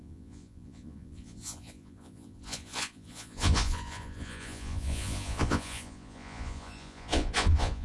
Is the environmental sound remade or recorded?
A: remade